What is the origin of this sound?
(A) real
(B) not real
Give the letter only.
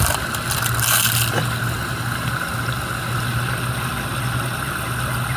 A